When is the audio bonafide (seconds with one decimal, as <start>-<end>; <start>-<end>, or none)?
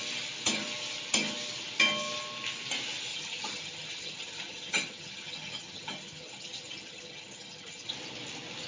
0.0-3.1; 7.9-8.7